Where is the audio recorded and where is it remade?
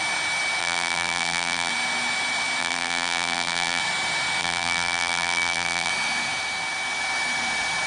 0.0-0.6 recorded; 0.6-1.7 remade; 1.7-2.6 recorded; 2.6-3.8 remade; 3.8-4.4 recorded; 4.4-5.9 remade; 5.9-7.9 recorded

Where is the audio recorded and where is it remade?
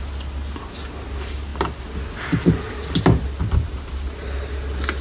0.0-5.0 recorded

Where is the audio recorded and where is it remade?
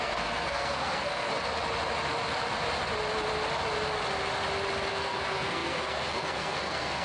0.0-1.3 remade; 1.3-4.9 recorded; 4.9-7.0 remade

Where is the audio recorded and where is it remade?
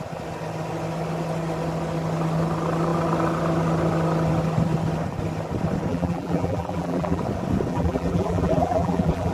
0.0-5.9 recorded; 5.9-7.2 remade; 7.2-7.7 recorded; 7.7-9.3 remade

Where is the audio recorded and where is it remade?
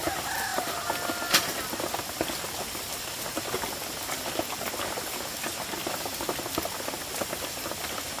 0.0-8.2 recorded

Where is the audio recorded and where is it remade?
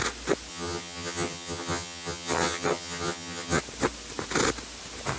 0.0-0.5 recorded; 0.5-3.6 remade; 3.6-5.2 recorded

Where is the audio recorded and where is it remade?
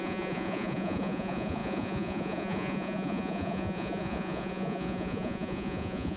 0.0-6.2 remade